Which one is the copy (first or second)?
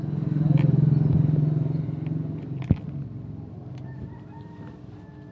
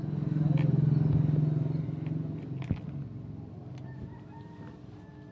first